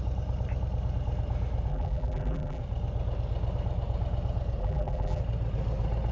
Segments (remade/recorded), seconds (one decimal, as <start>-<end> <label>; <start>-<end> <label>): 0.0-1.7 recorded; 1.7-2.6 remade; 2.6-4.6 recorded; 4.6-5.2 remade; 5.2-6.1 recorded